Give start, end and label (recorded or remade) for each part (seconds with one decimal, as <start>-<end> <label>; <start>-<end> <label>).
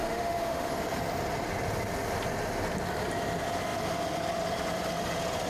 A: 0.0-0.7 remade; 0.7-5.5 recorded